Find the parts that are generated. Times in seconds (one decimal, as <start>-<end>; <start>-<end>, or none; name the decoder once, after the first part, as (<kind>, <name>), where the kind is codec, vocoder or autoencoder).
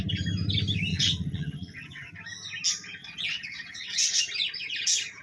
0.9-2.1 (vocoder, WaveNeXt); 3.0-4.2